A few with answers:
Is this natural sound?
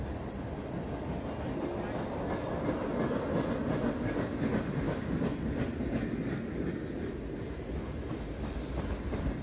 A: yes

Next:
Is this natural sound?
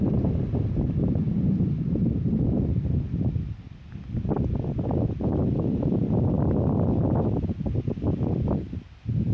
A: yes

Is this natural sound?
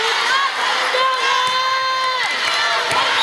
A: yes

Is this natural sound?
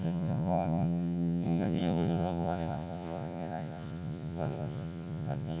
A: no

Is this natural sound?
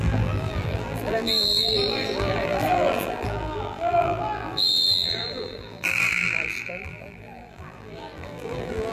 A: no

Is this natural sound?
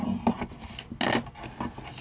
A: yes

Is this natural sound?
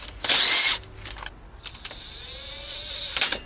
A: yes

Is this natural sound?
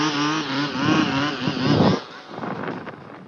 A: yes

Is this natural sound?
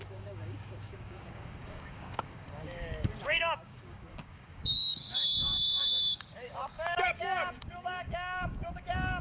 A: no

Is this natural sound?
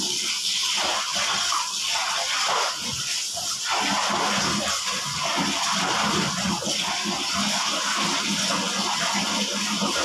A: yes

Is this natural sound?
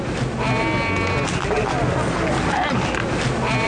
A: yes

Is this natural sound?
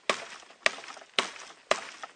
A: yes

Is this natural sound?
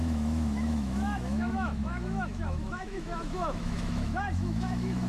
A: no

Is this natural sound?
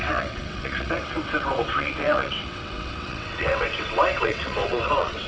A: no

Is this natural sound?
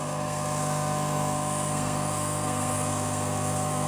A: no